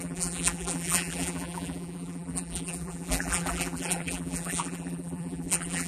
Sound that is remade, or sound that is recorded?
remade